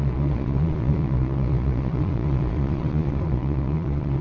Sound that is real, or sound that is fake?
fake